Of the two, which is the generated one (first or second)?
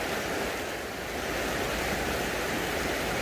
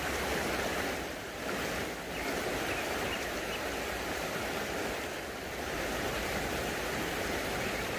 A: second